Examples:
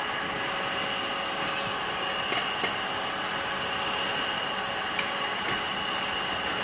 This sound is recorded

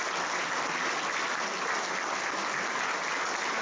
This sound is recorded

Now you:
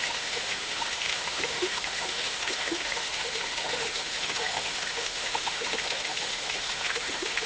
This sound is remade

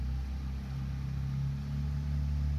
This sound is recorded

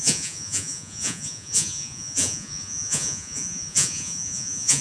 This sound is remade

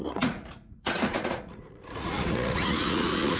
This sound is remade